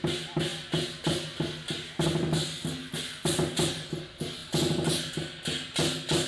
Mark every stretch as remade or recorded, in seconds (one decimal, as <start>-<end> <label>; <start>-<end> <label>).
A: 0.0-6.3 recorded